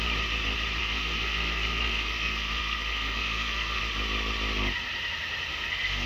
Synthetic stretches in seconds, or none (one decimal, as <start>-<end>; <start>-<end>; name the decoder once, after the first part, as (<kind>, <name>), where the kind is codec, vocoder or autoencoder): 0.8-3.8 (codec, SNAC); 5.5-6.1